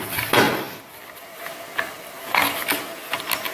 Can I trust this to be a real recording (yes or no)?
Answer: yes